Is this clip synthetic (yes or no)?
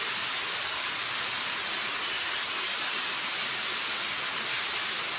no